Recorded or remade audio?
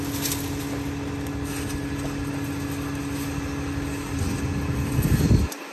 recorded